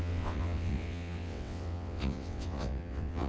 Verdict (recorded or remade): remade